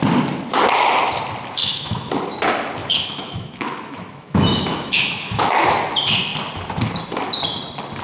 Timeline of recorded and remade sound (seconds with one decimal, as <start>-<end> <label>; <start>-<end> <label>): 0.0-1.6 recorded; 1.6-2.1 remade; 2.1-2.8 recorded; 2.8-5.7 remade; 5.7-8.0 recorded